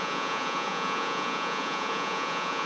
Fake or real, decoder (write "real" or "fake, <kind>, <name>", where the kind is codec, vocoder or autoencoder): fake, vocoder, Vocos